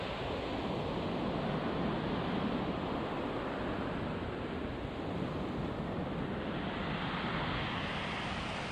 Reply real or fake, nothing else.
real